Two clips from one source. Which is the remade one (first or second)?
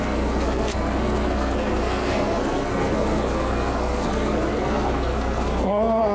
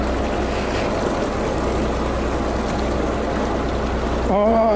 first